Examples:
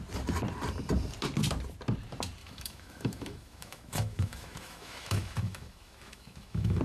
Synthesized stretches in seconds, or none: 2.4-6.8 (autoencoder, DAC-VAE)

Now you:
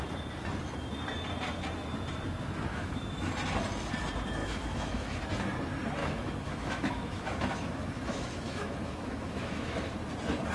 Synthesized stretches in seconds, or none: 2.7-3.3 (autoencoder, DAC-VAE); 4.4-5.2; 6.0-9.9

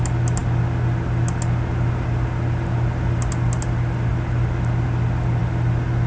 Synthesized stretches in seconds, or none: none

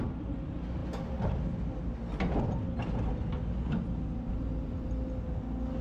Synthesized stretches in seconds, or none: none

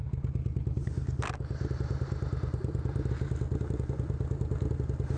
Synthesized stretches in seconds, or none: none

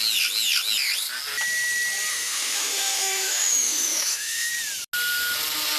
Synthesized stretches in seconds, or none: 2.1-4.5 (autoencoder, DAC-VAE)

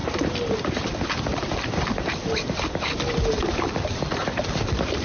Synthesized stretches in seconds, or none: none

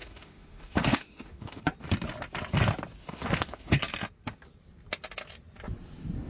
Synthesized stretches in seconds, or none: 0.0-1.6 (autoencoder, DAC-VAE); 3.0-3.8